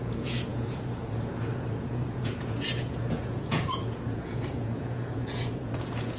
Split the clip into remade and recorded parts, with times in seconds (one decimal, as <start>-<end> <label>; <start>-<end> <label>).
0.0-6.2 remade